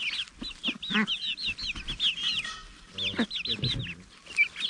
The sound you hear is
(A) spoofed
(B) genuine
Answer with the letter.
B